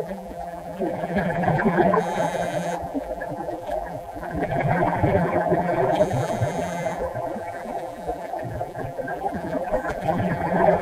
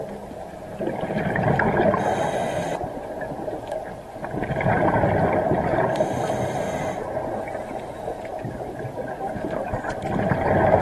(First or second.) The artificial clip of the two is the first